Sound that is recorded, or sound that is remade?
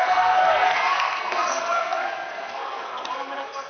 remade